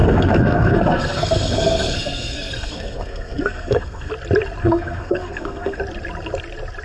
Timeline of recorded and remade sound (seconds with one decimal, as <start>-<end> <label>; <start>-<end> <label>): 0.0-4.1 remade; 4.1-4.6 recorded; 4.6-5.8 remade; 5.8-6.8 recorded